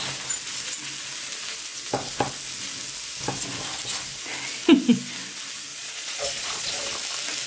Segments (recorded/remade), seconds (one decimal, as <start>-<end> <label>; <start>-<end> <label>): 0.0-5.7 recorded; 5.7-6.7 remade; 6.7-7.5 recorded